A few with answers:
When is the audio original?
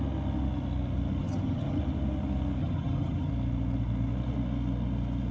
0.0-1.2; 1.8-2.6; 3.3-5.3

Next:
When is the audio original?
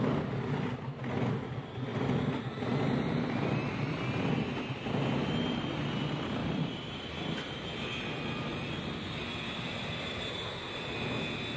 0.0-6.4; 11.2-11.6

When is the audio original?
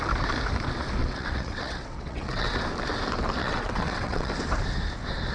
0.0-1.0; 2.6-3.4; 4.3-5.3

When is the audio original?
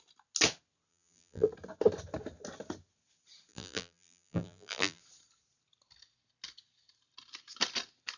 0.0-0.9; 1.5-3.5; 5.0-8.2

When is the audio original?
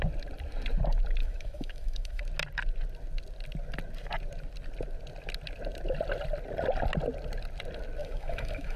0.0-1.2; 2.2-8.0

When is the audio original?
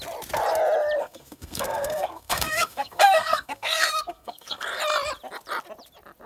0.0-1.0; 4.8-6.3